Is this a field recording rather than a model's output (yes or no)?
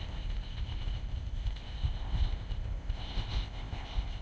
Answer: no